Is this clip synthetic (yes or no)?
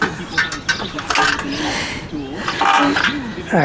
no